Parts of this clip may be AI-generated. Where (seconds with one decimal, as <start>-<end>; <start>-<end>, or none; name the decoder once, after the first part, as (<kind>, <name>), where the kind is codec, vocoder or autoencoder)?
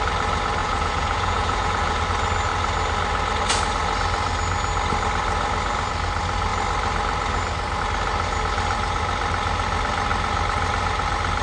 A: 0.6-2.0 (vocoder, Vocos)